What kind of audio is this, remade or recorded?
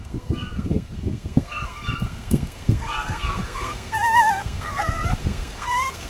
remade